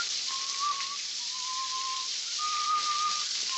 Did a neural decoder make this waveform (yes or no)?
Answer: yes